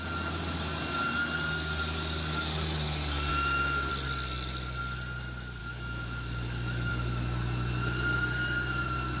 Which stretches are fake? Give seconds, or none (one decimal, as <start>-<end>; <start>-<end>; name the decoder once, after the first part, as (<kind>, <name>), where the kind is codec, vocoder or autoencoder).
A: 3.3-3.9 (autoencoder, DAC-VAE); 5.6-6.9

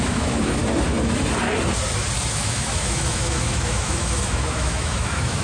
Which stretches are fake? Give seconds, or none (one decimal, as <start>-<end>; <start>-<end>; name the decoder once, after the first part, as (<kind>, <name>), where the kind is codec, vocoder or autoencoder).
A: 0.0-0.6 (autoencoder, DAC-VAE); 2.3-5.4

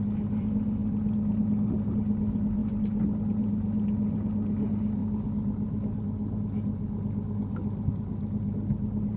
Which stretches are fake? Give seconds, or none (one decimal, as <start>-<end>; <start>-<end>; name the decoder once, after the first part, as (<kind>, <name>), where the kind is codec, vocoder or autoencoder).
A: none

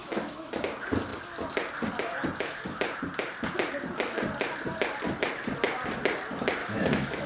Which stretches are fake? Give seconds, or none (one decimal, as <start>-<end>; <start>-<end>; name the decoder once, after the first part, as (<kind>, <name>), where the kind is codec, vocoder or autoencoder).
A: 0.0-0.5 (autoencoder, DAC-VAE); 6.6-7.3

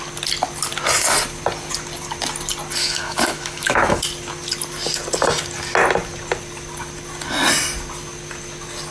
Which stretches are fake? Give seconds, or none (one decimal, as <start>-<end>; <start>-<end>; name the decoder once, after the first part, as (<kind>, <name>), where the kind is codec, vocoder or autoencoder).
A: 2.8-4.0 (autoencoder, DAC-VAE)